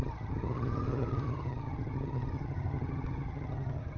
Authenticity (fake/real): fake